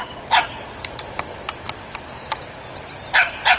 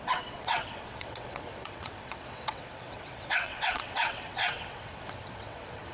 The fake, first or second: second